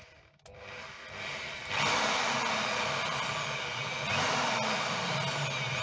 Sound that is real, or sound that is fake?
real